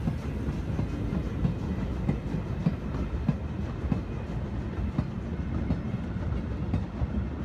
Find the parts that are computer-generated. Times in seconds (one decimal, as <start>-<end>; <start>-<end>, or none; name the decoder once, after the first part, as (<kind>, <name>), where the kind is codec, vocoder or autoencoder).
none